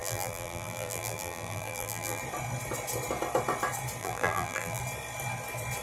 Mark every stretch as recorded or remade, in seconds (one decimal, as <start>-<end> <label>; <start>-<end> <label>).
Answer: 0.0-2.2 remade; 2.2-4.0 recorded; 4.0-4.8 remade; 4.8-5.8 recorded